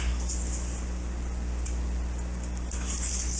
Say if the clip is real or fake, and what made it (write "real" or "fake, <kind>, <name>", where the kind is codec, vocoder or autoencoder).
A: real